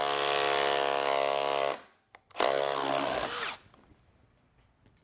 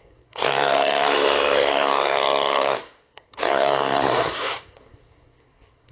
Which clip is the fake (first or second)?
second